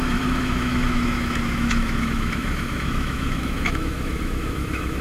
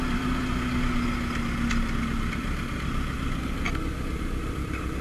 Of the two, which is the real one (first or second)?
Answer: second